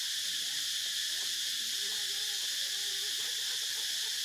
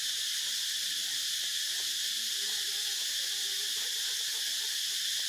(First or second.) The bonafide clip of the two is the second